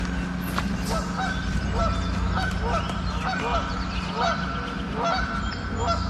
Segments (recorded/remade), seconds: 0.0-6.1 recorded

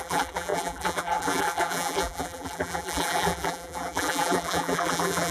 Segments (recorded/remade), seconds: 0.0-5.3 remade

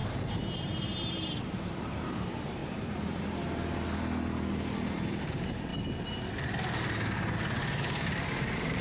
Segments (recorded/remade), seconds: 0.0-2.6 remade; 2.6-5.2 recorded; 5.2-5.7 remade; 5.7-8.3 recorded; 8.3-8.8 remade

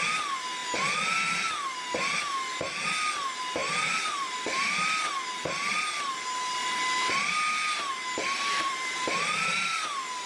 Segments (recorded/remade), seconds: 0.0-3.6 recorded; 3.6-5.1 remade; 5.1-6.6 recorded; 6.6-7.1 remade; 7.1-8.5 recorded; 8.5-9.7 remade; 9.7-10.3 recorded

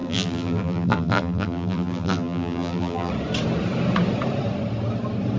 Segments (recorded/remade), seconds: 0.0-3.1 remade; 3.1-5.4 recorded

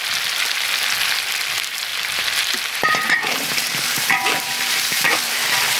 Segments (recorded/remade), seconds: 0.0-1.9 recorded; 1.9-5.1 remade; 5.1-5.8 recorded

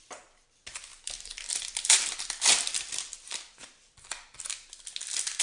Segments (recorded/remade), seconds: 0.0-0.9 recorded; 0.9-4.1 remade; 4.1-5.4 recorded

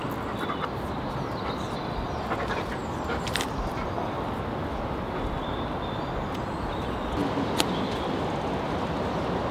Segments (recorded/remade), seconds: 0.0-2.8 recorded; 2.8-3.7 remade; 3.7-9.5 recorded